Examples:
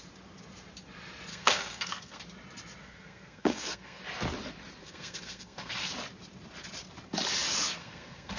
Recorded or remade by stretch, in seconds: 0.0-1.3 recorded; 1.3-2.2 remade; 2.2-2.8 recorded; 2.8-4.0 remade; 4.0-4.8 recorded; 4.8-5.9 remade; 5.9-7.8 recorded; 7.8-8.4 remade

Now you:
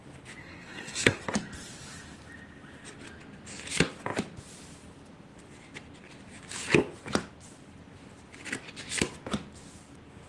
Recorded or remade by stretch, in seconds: 0.0-0.4 recorded; 0.4-1.2 remade; 1.2-10.3 recorded

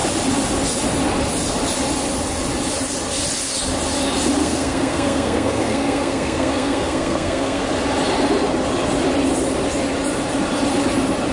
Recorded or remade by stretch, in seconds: 0.0-4.4 recorded; 4.4-7.6 remade; 7.6-11.3 recorded